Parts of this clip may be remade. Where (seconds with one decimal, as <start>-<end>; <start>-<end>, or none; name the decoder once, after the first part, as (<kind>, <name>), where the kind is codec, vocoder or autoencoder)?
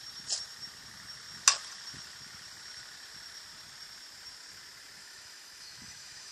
5.0-6.3 (autoencoder, DAC-VAE)